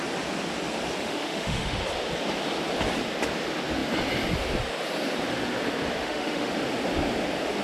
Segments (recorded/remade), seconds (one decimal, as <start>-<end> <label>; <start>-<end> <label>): 0.0-1.0 recorded; 1.0-1.8 remade; 1.8-6.0 recorded; 6.0-6.5 remade; 6.5-7.6 recorded